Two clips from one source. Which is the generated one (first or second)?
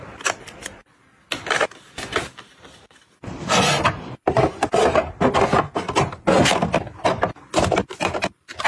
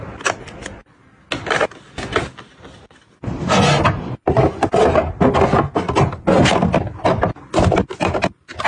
first